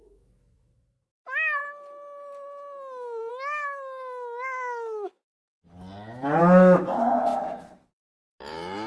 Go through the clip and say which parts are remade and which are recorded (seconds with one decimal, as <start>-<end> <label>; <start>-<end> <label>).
0.0-1.6 remade; 1.6-3.3 recorded; 3.3-5.4 remade; 5.4-6.4 recorded; 6.4-8.9 remade